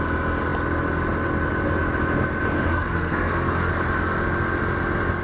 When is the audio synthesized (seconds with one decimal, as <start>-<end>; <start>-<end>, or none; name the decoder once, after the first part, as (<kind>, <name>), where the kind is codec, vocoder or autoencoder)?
2.7-3.7 (codec, SNAC)